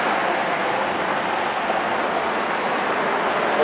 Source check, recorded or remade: recorded